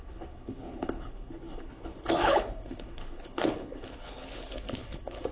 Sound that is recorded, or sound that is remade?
remade